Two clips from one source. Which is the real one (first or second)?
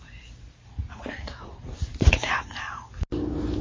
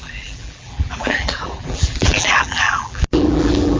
first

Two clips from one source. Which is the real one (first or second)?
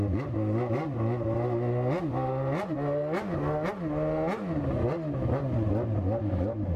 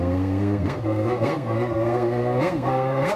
first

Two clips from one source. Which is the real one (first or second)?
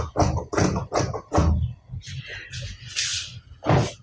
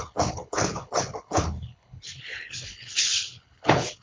first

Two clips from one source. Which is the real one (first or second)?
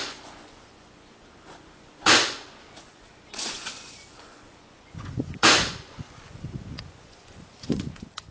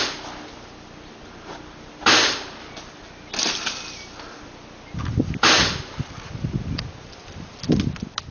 second